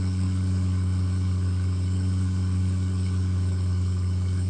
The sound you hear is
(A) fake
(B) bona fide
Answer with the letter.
A